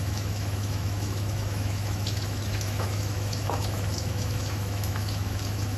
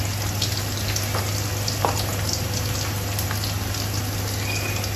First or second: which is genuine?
second